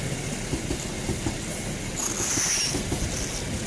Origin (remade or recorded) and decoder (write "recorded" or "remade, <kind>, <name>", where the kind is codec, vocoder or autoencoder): recorded